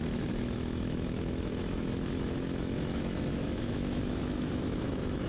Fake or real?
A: fake